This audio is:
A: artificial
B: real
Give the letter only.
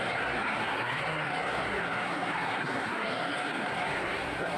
A